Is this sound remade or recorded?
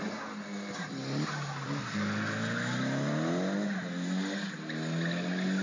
recorded